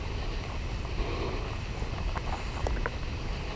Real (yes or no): yes